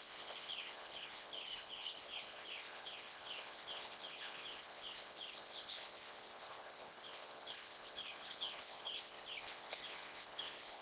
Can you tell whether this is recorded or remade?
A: remade